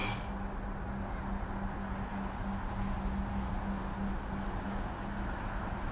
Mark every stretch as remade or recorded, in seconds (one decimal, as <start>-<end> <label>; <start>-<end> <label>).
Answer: 0.0-5.9 recorded